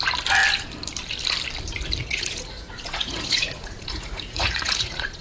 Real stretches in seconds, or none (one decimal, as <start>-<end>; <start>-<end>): 0.0-2.0